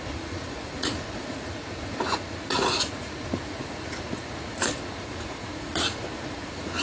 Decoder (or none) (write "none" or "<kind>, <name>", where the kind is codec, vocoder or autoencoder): vocoder, Vocos